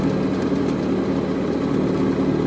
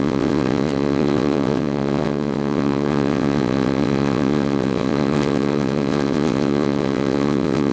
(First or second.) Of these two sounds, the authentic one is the first